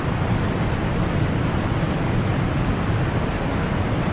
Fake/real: real